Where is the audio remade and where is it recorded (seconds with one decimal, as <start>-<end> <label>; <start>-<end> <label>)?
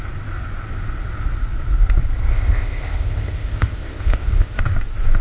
0.0-2.3 recorded; 2.3-4.6 remade; 4.6-5.2 recorded